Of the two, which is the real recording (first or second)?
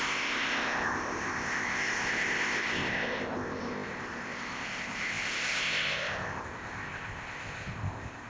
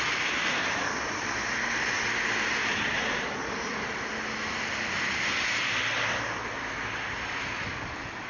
second